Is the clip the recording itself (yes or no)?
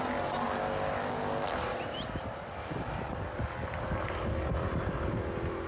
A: yes